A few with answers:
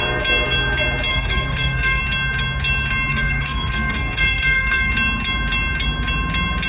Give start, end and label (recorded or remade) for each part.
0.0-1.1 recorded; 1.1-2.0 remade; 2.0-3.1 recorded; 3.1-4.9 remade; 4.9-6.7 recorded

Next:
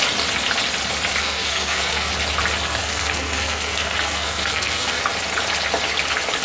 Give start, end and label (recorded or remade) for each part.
0.0-1.2 recorded; 1.2-2.1 remade; 2.1-2.7 recorded; 2.7-5.0 remade; 5.0-6.4 recorded

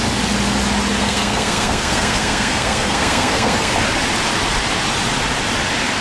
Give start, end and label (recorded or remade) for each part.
0.0-1.0 recorded; 1.0-3.7 remade; 3.7-6.0 recorded

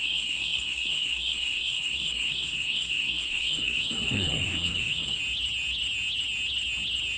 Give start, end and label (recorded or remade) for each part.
0.0-5.2 remade; 5.2-7.2 recorded

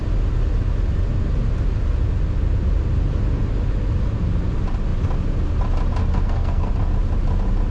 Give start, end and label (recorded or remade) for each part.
0.0-6.0 recorded; 6.0-6.7 remade; 6.7-7.7 recorded

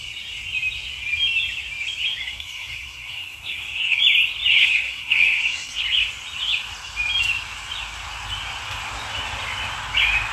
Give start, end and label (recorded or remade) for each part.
0.0-2.2 recorded; 2.2-4.0 remade; 4.0-4.5 recorded; 4.5-5.8 remade; 5.8-10.3 recorded